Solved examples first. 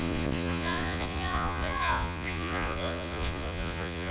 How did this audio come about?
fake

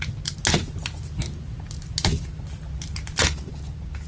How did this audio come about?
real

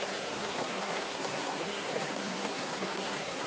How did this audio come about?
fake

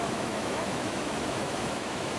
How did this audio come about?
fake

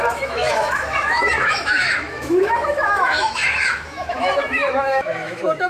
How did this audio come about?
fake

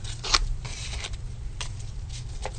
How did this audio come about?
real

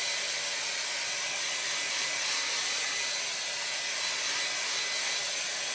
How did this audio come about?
real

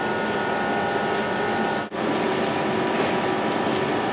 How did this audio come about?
real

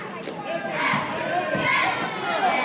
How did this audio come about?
real